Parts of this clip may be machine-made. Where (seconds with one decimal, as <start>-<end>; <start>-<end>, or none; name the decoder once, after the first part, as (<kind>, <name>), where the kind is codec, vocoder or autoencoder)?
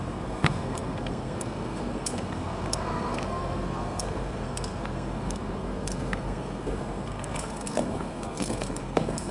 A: 0.0-9.3 (codec, SNAC)